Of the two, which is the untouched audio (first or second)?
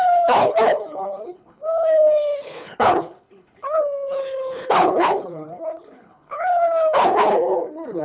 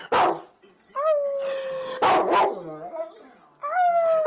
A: second